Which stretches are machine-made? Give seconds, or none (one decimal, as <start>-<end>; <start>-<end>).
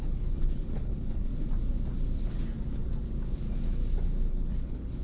0.0-1.3; 4.3-5.0